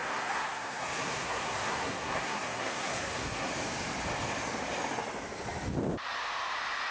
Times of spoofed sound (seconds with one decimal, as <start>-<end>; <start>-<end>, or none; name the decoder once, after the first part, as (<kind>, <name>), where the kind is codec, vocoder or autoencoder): 0.0-3.5 (codec, SNAC)